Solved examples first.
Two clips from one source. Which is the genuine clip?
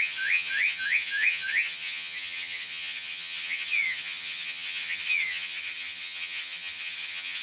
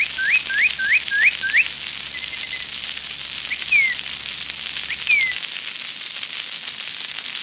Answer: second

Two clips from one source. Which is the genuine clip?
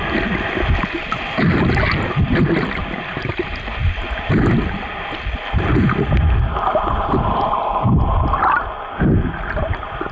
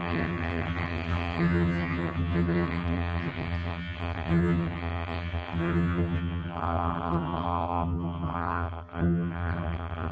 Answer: first